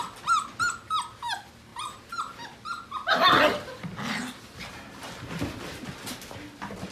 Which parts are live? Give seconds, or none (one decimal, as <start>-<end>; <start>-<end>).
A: 0.0-6.9